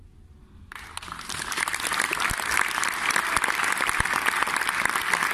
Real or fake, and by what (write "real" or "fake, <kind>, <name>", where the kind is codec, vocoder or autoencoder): real